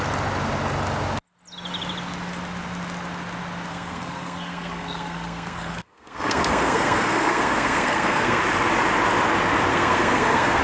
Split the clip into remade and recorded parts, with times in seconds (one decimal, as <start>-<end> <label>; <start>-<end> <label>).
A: 0.0-3.7 recorded; 3.7-8.4 remade; 8.4-9.7 recorded; 9.7-10.6 remade